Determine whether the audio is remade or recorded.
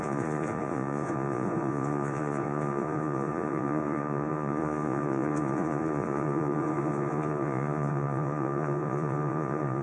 remade